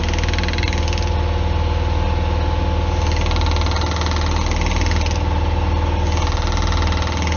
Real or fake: real